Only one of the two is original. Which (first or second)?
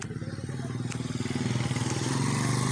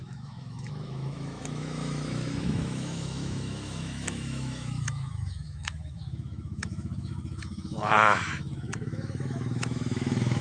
first